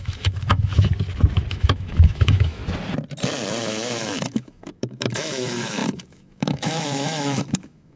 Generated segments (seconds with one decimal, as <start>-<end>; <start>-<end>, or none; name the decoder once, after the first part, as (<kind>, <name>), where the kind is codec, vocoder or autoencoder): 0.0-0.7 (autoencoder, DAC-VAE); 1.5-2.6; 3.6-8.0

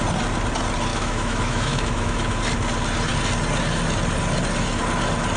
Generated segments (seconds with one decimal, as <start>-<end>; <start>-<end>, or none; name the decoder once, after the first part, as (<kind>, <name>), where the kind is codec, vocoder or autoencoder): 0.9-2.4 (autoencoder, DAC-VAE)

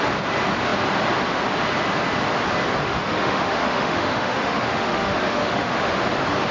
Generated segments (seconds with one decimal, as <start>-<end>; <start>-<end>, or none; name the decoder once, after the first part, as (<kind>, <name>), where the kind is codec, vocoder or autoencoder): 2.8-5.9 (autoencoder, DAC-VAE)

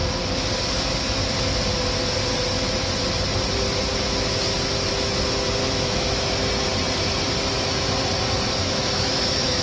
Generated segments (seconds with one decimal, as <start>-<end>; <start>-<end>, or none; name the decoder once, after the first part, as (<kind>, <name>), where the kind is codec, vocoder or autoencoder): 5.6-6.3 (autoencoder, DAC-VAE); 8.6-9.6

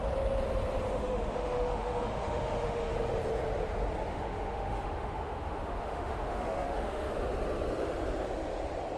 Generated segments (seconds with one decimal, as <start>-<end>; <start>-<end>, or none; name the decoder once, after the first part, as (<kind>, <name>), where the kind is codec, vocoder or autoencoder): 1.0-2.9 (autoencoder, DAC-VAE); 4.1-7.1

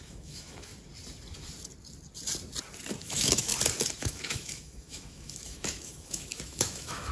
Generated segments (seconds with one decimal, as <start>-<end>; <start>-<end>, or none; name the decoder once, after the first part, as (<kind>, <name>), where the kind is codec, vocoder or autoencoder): 0.0-0.7 (autoencoder, DAC-VAE); 3.0-3.5; 4.0-7.1

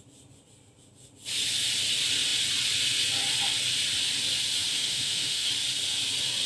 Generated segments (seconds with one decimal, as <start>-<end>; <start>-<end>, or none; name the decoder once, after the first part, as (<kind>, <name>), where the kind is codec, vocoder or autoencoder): 4.7-5.5 (autoencoder, DAC-VAE)